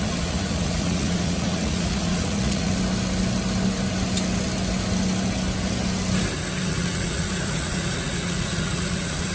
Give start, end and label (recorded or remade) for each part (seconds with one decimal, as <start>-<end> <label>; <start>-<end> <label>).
0.0-2.7 remade; 2.7-6.7 recorded; 6.7-9.3 remade